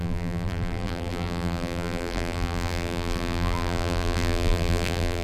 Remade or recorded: remade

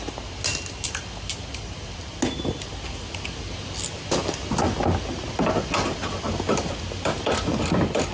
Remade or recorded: recorded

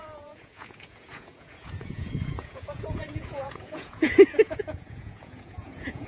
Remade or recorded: remade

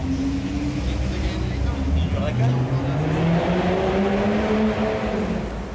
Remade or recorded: recorded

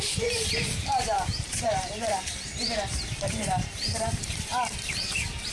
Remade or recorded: remade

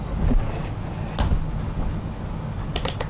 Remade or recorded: recorded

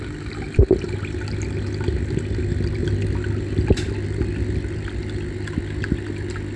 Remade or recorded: recorded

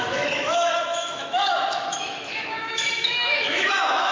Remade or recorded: remade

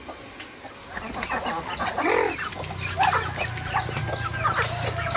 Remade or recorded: recorded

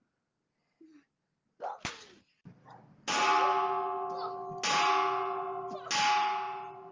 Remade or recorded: recorded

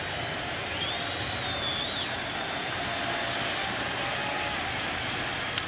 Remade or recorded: recorded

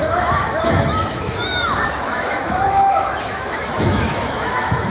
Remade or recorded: remade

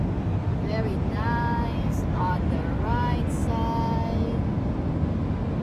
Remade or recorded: recorded